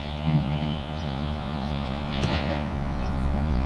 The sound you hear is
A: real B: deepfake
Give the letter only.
B